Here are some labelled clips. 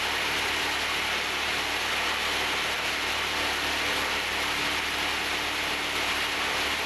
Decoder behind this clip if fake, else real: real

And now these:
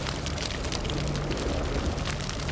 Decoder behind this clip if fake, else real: real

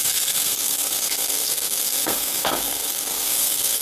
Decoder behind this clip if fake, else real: fake, codec, SNAC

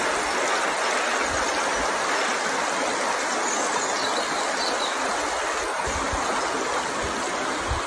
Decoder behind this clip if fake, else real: real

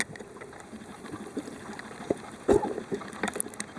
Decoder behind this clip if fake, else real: real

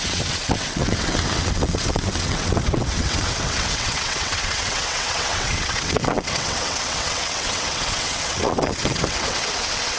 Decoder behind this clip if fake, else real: fake, vocoder, WaveNeXt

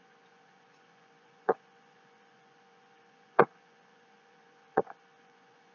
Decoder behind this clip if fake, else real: fake, vocoder, Vocos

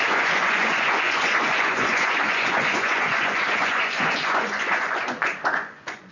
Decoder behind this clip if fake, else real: fake, vocoder, Vocos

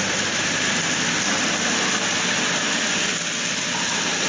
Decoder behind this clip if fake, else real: real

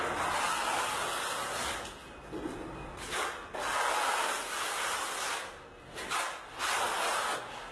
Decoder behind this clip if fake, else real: real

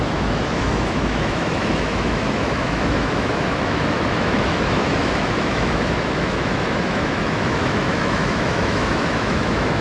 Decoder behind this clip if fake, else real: fake, autoencoder, DAC-VAE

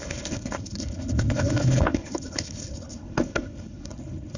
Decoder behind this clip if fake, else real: fake, codec, HILCodec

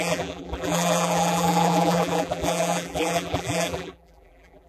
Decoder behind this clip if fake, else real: fake, vocoder, BigVGAN v2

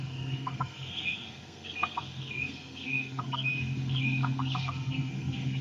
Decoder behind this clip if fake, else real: fake, codec, SNAC